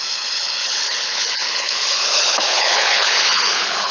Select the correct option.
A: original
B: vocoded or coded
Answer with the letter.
B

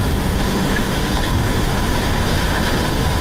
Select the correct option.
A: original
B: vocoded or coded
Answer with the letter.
B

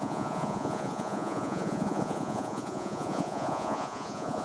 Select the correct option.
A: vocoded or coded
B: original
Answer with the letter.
A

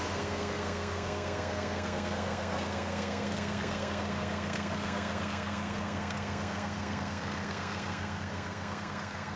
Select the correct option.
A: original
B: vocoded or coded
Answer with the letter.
B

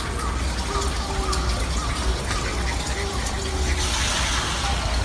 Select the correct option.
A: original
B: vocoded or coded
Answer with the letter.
A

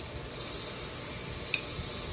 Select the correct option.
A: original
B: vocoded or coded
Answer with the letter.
A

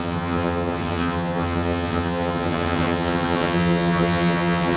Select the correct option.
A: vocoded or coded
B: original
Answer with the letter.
A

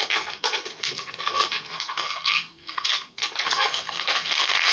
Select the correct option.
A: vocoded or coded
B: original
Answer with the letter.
A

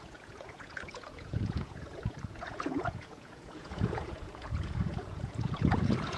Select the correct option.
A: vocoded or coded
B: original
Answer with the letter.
A